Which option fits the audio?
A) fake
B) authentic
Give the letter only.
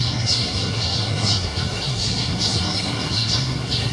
A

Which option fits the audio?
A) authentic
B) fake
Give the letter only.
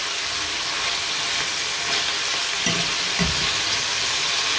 A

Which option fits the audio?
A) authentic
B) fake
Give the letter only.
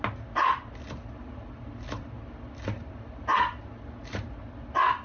A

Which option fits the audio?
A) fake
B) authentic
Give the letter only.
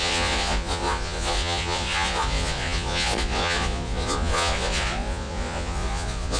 A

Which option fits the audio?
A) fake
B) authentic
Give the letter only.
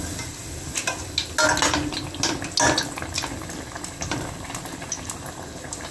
B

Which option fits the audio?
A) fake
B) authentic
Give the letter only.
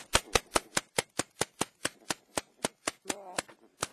B